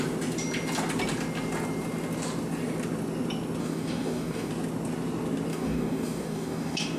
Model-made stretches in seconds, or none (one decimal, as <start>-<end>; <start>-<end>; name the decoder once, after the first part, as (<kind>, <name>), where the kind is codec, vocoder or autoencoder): 3.6-4.5 (codec, DAC); 5.5-7.0